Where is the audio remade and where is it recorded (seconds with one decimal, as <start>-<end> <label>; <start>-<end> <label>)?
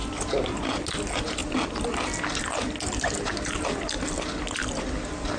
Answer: 0.0-5.4 recorded